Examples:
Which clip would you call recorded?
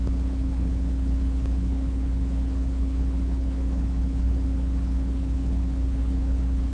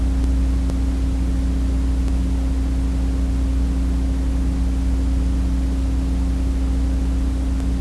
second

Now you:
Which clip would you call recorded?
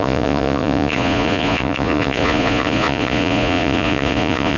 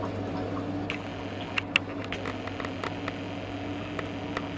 second